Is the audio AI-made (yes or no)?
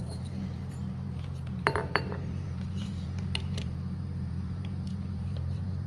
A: yes